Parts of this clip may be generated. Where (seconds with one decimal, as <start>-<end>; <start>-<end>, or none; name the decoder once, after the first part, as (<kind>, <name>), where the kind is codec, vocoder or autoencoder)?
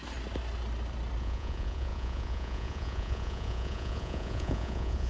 1.2-5.1 (vocoder, Vocos)